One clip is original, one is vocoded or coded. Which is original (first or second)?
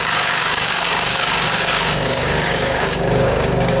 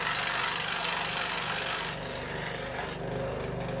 second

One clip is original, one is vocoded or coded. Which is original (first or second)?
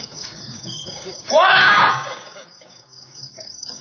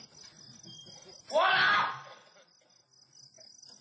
second